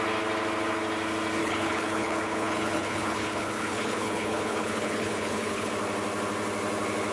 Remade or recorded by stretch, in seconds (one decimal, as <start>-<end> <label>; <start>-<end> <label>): 0.0-1.4 recorded; 1.4-5.7 remade; 5.7-7.1 recorded